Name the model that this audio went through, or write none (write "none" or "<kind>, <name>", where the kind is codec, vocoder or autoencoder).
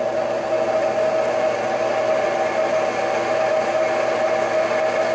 none